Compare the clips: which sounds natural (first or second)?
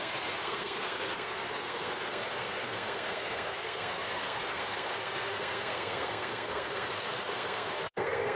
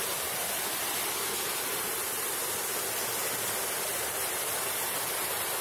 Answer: second